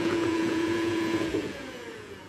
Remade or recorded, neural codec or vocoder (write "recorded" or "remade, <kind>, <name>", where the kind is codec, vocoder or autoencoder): remade, vocoder, Vocos